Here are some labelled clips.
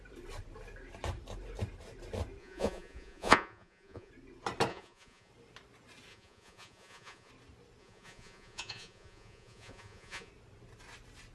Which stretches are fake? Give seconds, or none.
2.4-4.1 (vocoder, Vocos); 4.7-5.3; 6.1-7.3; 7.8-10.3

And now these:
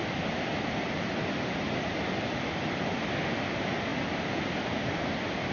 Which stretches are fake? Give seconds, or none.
none

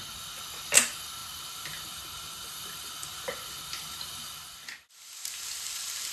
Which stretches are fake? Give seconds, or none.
none

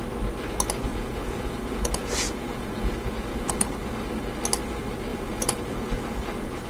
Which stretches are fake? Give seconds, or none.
0.9-3.9 (vocoder, Vocos); 5.1-6.7

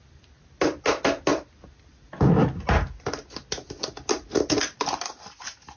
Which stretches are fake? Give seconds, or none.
none